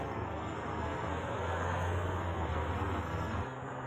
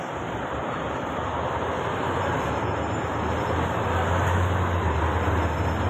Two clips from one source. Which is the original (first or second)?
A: second